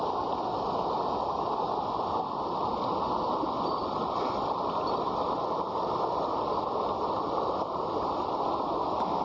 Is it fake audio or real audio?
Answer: real